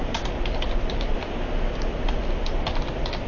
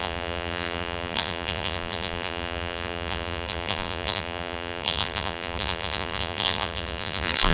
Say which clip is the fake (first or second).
second